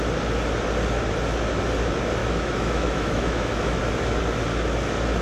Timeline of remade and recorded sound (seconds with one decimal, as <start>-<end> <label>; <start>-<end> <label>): 0.0-2.2 recorded; 2.2-3.8 remade; 3.8-5.2 recorded